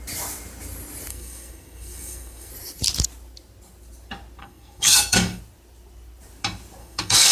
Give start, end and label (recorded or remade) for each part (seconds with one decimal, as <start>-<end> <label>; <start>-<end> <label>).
0.0-1.1 recorded; 1.1-2.5 remade; 2.5-4.4 recorded; 4.4-5.4 remade; 5.4-6.8 recorded; 6.8-7.3 remade